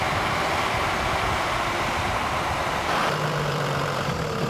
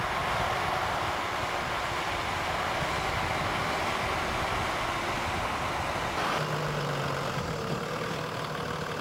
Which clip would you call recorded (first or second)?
second